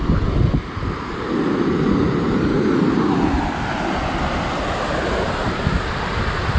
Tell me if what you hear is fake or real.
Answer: real